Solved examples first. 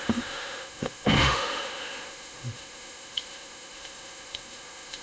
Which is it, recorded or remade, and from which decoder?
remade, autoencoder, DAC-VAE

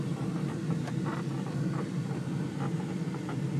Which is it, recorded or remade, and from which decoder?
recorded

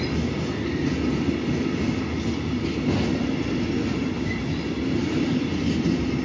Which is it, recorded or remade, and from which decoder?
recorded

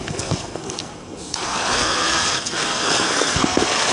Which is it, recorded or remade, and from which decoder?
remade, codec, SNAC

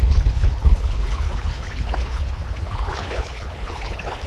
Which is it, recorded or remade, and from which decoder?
remade, codec, HILCodec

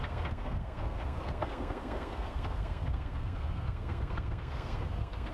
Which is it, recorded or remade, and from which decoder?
remade, codec, SNAC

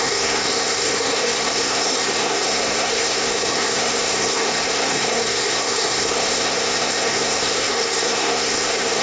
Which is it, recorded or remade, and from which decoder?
remade, codec, SNAC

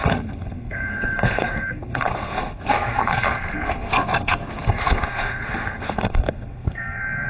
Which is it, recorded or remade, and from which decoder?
remade, codec, SNAC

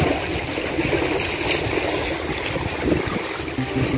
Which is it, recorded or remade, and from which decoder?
recorded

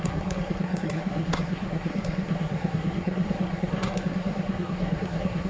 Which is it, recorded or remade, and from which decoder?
remade, codec, SNAC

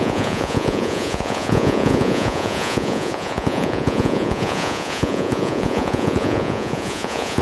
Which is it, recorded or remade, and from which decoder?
remade, vocoder, Vocos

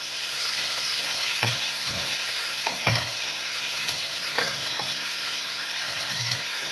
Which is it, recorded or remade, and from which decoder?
remade, codec, SNAC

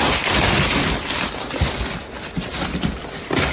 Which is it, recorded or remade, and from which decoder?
remade, vocoder, BigVGAN v2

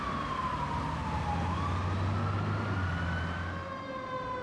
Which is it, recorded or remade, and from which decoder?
recorded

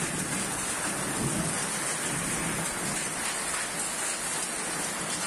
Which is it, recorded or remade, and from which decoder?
recorded